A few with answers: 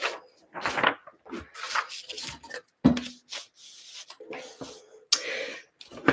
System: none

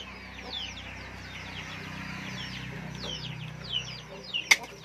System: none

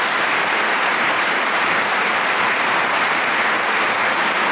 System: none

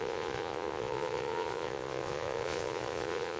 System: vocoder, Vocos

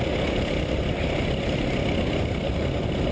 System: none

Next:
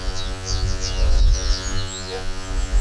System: vocoder, Vocos